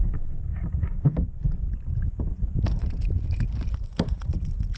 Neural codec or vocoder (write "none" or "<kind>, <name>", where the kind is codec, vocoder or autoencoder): none